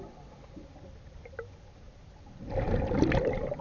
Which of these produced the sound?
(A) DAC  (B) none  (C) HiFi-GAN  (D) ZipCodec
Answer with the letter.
B